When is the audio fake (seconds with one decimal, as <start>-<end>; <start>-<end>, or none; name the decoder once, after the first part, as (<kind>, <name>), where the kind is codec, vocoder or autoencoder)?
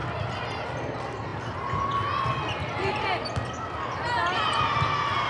none